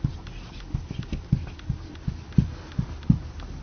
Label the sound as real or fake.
real